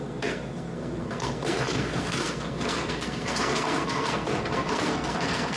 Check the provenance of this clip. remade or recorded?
remade